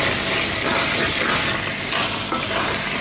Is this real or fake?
real